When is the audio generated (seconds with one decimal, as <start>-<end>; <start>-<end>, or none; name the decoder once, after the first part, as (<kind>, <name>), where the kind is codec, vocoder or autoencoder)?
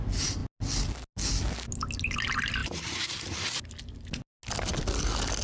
2.6-3.2 (vocoder, BigVGAN v2)